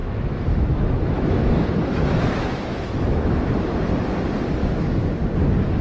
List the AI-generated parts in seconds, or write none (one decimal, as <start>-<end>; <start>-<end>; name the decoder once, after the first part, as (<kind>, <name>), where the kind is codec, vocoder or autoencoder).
0.0-3.5 (autoencoder, DAC-VAE); 4.6-5.3